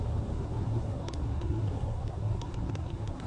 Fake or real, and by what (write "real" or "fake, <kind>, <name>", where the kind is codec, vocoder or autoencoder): fake, codec, SNAC